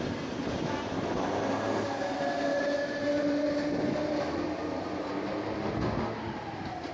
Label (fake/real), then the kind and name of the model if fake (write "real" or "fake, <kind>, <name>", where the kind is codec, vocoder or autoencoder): real